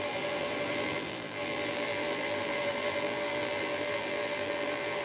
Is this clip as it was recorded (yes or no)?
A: no